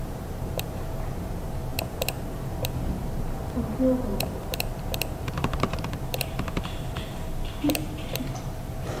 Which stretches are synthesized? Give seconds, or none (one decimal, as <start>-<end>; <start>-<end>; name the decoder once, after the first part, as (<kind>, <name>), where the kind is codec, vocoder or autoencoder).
0.0-9.0 (vocoder, BigVGAN v2)